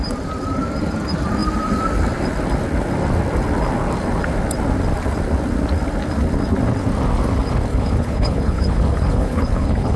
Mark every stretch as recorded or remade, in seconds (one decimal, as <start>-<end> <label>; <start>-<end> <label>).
0.0-7.7 recorded; 7.7-10.0 remade